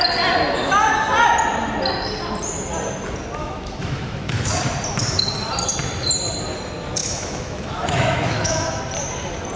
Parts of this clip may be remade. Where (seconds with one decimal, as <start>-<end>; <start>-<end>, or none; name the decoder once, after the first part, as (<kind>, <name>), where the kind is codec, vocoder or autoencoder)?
3.4-4.6 (autoencoder, DAC-VAE); 7.0-8.8